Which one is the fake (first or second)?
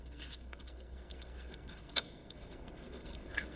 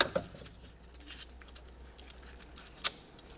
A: first